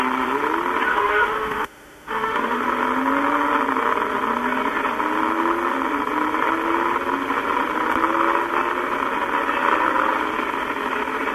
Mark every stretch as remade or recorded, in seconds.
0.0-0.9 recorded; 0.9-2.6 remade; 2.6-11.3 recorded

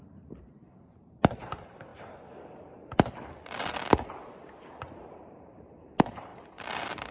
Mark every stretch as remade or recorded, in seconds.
0.0-1.9 remade; 1.9-4.7 recorded; 4.7-7.1 remade

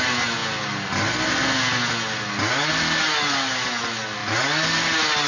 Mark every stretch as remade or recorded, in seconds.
0.0-5.3 recorded